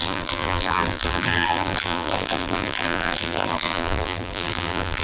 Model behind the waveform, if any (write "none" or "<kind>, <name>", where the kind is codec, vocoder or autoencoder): vocoder, BigVGAN v2